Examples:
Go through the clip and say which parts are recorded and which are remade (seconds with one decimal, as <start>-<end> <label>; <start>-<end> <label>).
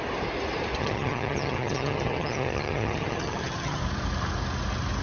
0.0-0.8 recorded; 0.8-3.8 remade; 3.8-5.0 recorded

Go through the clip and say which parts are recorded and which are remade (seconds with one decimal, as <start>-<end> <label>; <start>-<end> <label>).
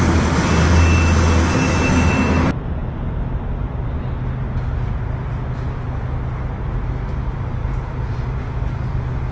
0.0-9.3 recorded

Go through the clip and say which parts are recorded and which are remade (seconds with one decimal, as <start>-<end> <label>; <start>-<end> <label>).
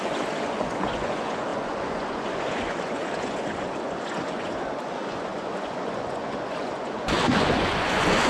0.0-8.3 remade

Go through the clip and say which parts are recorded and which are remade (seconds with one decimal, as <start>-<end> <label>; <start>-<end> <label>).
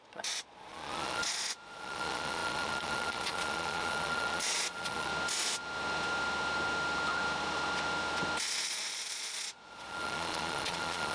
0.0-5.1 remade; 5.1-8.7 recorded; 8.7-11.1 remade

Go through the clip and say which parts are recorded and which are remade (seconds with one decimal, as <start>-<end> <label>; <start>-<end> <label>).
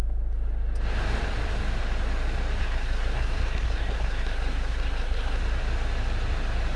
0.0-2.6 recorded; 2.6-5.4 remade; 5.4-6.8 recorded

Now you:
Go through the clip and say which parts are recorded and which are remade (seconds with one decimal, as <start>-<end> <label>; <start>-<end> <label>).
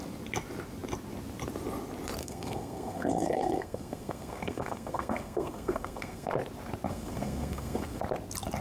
0.0-2.2 recorded; 2.2-6.3 remade; 6.3-6.9 recorded; 6.9-8.0 remade; 8.0-8.6 recorded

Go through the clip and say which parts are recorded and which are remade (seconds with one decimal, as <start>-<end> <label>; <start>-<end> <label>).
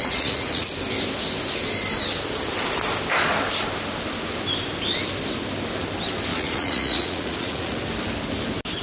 0.0-0.7 remade; 0.7-6.3 recorded; 6.3-7.8 remade; 7.8-8.8 recorded